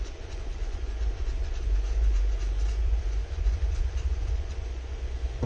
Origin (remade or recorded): remade